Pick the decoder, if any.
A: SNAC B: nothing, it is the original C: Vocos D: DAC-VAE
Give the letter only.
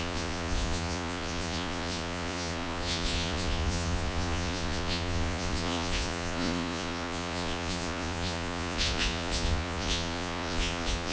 C